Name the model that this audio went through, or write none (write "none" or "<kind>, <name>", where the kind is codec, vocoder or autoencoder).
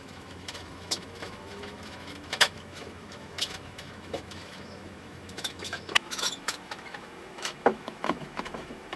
autoencoder, DAC-VAE